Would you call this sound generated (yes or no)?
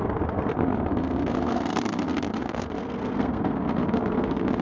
yes